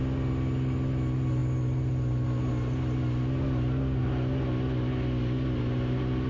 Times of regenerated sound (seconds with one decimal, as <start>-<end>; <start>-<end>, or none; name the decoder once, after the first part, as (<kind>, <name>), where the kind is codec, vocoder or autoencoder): none